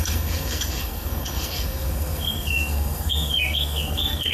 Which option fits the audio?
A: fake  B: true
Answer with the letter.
A